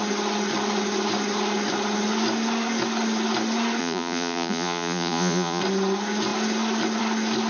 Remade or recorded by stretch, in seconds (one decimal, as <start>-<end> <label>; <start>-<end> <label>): 0.0-3.8 recorded; 3.8-5.6 remade; 5.6-7.5 recorded